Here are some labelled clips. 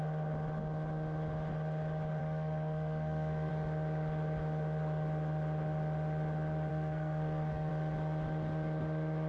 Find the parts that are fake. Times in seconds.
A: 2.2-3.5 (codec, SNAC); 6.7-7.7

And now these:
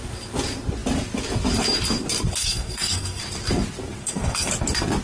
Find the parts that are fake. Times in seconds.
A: 2.4-3.2 (codec, SNAC); 4.0-4.5

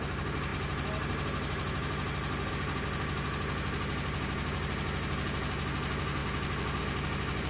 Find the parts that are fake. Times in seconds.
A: none